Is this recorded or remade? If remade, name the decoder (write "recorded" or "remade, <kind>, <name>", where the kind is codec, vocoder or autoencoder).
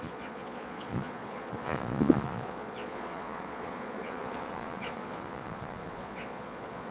remade, vocoder, Vocos